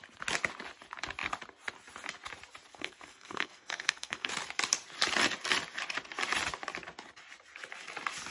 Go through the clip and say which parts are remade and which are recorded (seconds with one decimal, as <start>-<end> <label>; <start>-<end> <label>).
0.0-2.7 recorded; 2.7-4.3 remade; 4.3-8.3 recorded